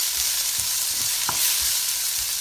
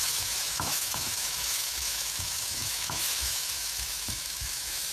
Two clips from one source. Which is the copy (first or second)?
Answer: second